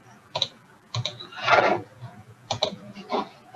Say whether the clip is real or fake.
fake